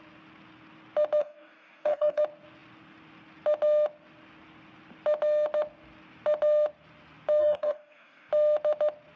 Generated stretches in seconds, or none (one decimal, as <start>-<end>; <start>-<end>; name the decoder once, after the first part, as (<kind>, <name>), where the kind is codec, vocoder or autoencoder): 1.2-2.2 (codec, DAC); 7.4-8.3